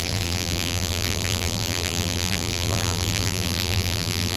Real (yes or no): no